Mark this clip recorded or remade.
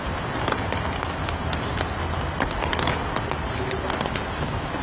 recorded